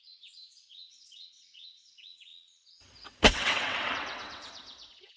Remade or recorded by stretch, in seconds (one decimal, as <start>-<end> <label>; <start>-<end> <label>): 0.0-5.2 remade

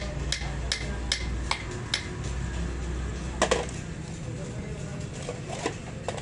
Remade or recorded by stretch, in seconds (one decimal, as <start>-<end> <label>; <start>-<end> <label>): 0.0-6.2 recorded

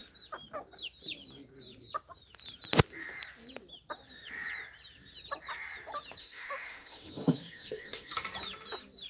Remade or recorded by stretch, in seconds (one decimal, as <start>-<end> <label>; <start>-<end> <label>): 0.0-6.2 recorded; 6.2-8.2 remade; 8.2-9.1 recorded

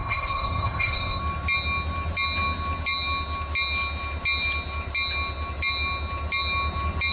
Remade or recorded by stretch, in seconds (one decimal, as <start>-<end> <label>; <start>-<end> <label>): 0.0-1.2 remade; 1.2-7.1 recorded

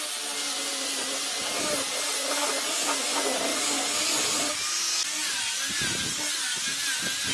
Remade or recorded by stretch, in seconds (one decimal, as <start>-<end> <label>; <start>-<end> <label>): 0.0-7.3 recorded

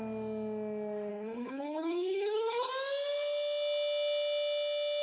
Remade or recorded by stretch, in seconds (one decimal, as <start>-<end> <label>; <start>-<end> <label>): 0.0-1.1 recorded; 1.1-2.7 remade; 2.7-5.0 recorded